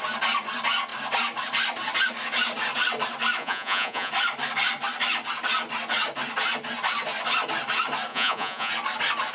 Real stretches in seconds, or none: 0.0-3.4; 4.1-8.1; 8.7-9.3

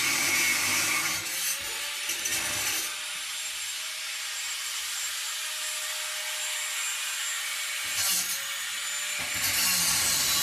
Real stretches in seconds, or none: 0.0-3.3; 5.2-10.4

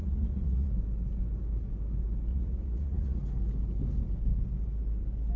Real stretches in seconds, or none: 0.7-2.3; 3.2-5.4

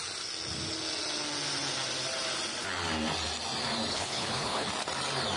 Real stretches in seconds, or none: 0.0-3.9; 4.7-5.4

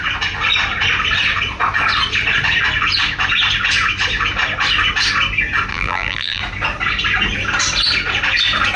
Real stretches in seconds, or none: 0.0-5.7; 6.4-8.8

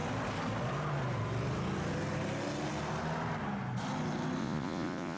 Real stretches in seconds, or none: 0.0-4.4

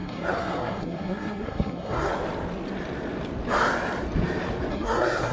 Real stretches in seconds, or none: 2.1-4.7